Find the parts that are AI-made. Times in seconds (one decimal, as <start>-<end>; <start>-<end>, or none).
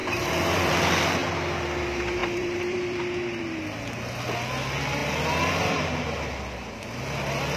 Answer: 0.0-0.7; 2.2-3.0